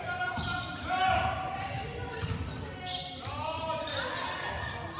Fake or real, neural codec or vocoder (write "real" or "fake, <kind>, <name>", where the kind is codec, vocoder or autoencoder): real